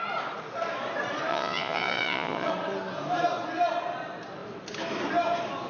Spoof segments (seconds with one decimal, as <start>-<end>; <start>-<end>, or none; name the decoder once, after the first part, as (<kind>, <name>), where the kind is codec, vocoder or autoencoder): 1.3-2.5 (vocoder, Vocos)